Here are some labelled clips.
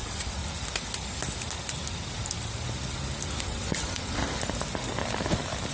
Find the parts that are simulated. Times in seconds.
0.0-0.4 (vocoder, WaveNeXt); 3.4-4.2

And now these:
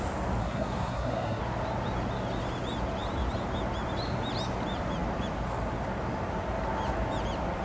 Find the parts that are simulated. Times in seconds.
0.4-1.4 (codec, SNAC)

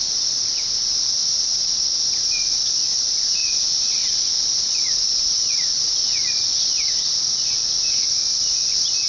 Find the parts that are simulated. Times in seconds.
3.4-6.9 (vocoder, Vocos)